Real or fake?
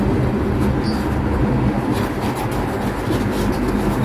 real